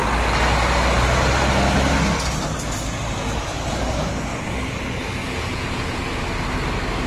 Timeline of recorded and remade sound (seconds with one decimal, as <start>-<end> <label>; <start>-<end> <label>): 0.0-5.2 recorded; 5.2-6.0 remade; 6.0-7.1 recorded